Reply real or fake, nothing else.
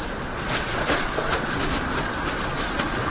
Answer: fake